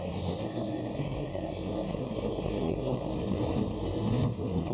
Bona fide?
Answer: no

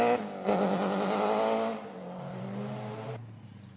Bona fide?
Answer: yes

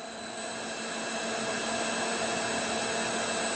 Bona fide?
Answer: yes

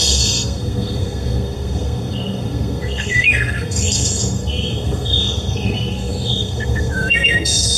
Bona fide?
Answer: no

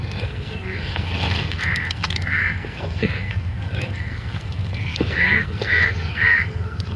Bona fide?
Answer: no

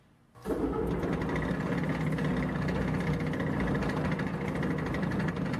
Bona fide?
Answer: yes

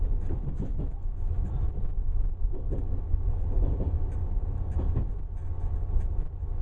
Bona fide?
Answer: yes